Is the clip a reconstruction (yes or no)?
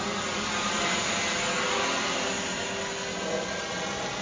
no